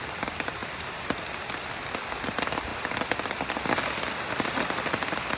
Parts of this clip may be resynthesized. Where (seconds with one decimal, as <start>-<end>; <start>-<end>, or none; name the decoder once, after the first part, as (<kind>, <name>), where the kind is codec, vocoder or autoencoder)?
none